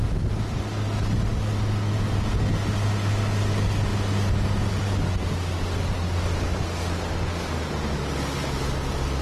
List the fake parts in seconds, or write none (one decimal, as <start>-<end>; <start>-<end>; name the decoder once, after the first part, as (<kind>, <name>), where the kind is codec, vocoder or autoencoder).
none